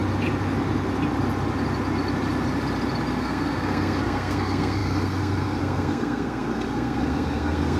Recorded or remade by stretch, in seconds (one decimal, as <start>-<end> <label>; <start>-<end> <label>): 0.0-3.2 recorded; 3.2-7.8 remade